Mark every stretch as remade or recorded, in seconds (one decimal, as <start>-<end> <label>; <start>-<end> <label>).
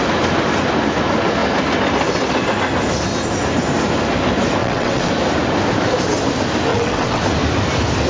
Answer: 0.0-4.6 recorded; 4.6-5.1 remade; 5.1-6.7 recorded; 6.7-7.2 remade; 7.2-8.1 recorded